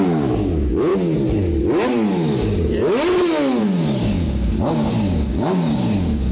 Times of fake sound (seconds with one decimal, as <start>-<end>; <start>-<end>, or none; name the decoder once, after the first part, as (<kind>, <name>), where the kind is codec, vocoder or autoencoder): 0.0-0.9 (codec, DAC); 3.6-6.3